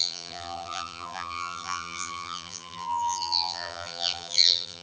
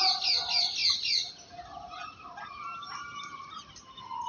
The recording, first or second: second